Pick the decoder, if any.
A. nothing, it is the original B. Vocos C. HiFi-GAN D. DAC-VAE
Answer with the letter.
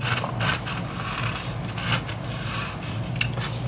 A